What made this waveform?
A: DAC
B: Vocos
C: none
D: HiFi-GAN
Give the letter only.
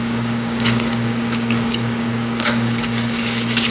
A